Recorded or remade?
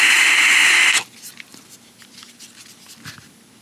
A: recorded